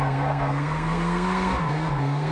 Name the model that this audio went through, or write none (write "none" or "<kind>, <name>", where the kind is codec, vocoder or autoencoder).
codec, SNAC